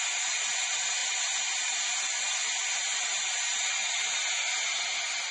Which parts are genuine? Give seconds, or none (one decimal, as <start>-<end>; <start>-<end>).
0.0-5.3